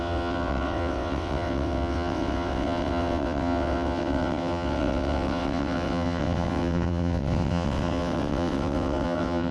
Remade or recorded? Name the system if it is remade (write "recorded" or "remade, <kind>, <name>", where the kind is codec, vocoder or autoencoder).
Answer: remade, vocoder, WaveNeXt